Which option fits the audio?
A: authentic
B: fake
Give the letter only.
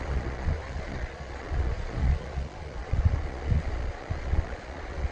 B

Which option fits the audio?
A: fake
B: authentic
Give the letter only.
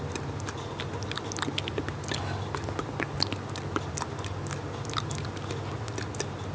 B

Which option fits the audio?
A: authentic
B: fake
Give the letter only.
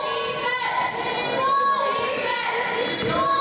A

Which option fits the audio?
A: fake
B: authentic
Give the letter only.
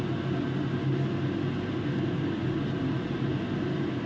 B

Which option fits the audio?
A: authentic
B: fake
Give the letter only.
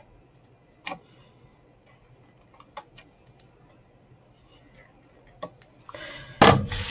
A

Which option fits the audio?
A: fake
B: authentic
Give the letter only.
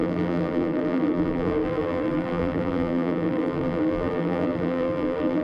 A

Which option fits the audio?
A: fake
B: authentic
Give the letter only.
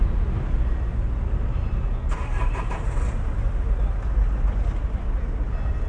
B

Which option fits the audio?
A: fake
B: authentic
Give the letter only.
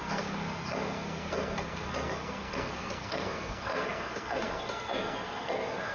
A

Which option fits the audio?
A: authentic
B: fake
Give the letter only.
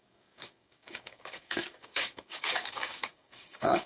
B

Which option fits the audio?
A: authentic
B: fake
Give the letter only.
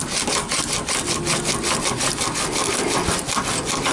A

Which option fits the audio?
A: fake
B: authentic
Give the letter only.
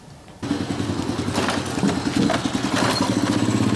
B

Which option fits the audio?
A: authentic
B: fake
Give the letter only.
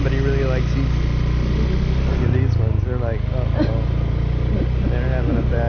A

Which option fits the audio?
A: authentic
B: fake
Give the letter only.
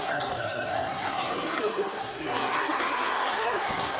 B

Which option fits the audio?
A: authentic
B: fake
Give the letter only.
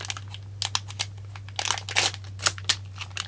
A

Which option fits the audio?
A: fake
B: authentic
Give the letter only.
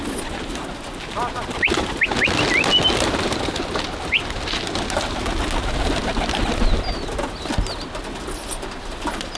B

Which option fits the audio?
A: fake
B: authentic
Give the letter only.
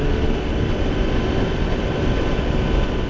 B